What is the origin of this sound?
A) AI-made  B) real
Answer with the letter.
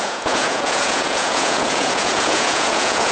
A